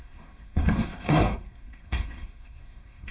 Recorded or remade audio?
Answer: remade